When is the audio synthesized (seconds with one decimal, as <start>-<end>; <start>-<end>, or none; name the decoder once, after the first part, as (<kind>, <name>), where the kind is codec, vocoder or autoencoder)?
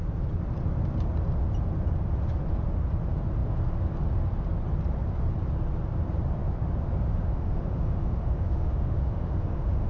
7.1-9.9 (autoencoder, DAC-VAE)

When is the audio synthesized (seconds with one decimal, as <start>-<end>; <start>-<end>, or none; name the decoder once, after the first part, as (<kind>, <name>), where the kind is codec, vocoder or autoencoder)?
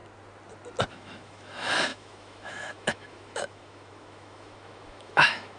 0.9-5.6 (autoencoder, DAC-VAE)